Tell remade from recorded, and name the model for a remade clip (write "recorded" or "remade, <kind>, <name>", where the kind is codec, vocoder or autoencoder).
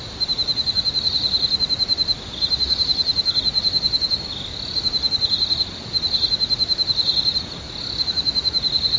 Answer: recorded